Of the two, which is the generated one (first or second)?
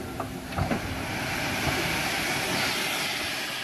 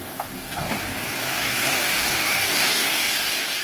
second